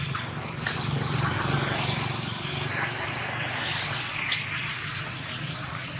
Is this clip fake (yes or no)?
no